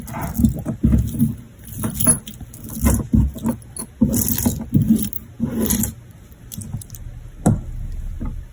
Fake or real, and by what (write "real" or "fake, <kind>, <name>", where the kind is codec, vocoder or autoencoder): real